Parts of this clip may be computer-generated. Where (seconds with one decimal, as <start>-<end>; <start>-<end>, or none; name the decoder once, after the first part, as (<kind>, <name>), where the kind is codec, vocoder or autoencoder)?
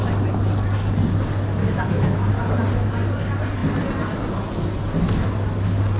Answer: 1.6-2.3 (autoencoder, DAC-VAE)